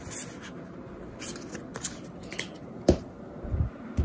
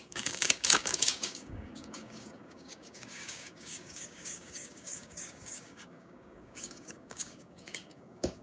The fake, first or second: second